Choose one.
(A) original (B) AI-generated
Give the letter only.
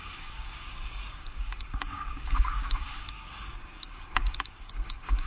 B